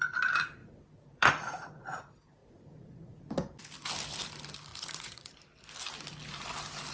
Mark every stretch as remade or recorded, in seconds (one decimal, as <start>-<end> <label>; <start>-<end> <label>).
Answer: 0.0-0.6 recorded; 0.6-2.0 remade; 2.0-2.4 recorded; 2.4-3.2 remade; 3.2-4.7 recorded; 4.7-5.3 remade; 5.3-6.9 recorded